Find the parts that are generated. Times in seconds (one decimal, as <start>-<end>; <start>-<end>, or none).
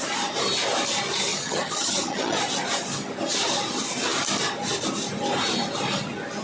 1.3-2.4